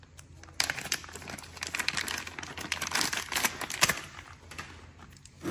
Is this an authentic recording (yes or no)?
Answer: yes